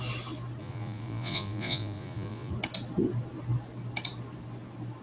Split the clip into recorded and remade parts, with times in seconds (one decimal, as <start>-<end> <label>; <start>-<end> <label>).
0.0-0.6 recorded; 0.6-2.5 remade; 2.5-5.0 recorded